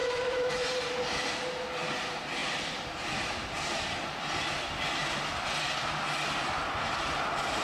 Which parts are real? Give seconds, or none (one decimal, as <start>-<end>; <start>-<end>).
0.5-2.4; 3.3-7.6